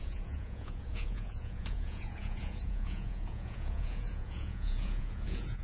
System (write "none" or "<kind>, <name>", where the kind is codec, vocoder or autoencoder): vocoder, Vocos